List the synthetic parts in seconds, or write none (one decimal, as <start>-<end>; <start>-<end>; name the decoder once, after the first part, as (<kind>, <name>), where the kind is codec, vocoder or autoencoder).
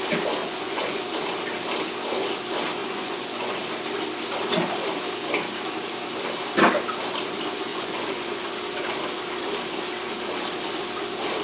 0.4-1.0 (vocoder, Vocos); 2.8-3.6; 7.7-8.5